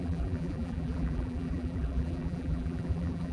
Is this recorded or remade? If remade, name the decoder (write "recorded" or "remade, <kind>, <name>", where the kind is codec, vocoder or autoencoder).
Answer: remade, vocoder, BigVGAN v2